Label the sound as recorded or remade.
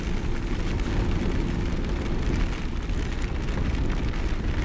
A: recorded